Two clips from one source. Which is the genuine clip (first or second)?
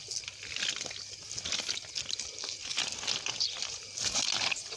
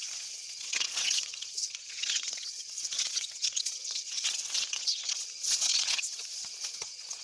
first